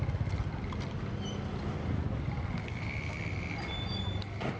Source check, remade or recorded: recorded